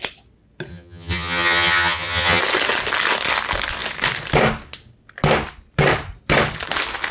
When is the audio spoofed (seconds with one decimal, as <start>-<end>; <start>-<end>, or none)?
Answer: 0.7-2.4

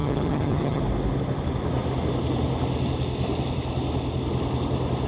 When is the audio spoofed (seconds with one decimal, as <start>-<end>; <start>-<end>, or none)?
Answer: 0.0-0.8

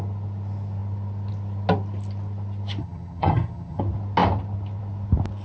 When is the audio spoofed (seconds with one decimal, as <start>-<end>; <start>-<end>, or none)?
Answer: 2.8-3.8

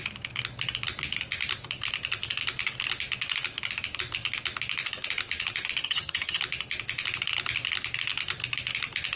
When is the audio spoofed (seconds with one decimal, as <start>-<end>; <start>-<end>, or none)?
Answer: 5.8-6.4

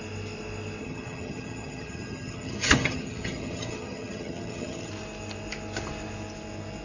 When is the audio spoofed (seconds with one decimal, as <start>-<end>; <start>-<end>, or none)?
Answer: 0.8-4.9

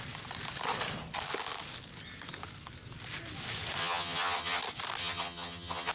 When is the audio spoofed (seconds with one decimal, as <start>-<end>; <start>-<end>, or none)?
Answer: 3.8-4.6; 5.0-5.9

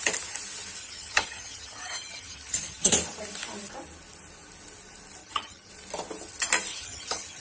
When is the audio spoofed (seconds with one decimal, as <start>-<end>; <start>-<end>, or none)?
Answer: 0.8-2.9; 5.2-5.7; 6.7-7.4

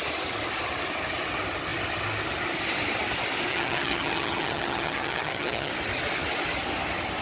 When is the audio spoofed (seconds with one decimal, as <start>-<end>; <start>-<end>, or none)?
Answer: 3.5-5.7